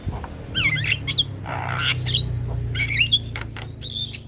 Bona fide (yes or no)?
yes